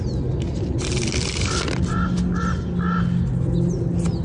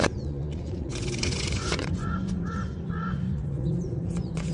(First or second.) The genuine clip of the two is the first